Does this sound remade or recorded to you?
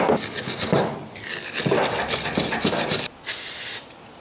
recorded